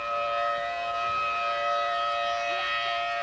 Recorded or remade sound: recorded